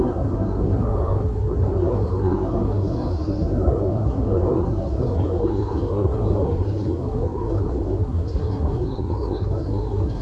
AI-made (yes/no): yes